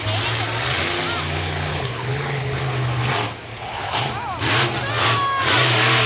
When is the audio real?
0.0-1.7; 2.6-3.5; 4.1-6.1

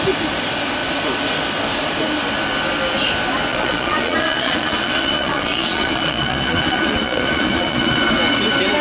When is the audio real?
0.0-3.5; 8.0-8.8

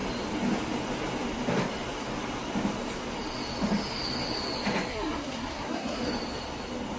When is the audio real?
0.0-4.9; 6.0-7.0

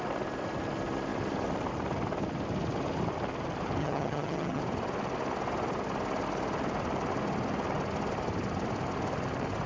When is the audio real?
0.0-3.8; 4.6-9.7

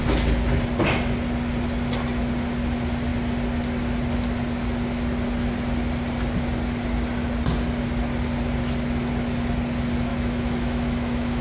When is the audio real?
0.0-10.1

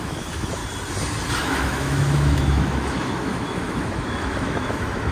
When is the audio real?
0.6-1.4

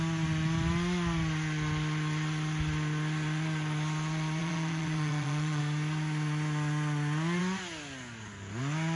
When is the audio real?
0.0-4.4; 5.6-9.0